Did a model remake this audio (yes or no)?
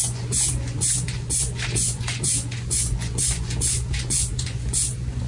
yes